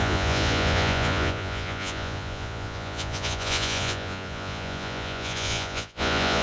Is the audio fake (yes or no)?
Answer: yes